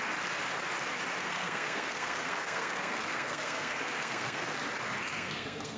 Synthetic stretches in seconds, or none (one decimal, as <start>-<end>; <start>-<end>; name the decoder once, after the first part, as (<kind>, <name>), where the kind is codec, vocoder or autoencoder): 1.2-4.6 (codec, SNAC); 5.1-5.8